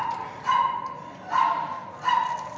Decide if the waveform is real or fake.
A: real